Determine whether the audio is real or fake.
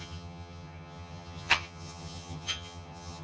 fake